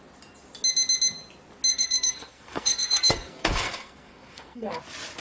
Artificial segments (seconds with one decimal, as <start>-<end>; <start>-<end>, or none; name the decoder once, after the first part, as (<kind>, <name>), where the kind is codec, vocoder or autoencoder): 1.7-4.8 (codec, SNAC)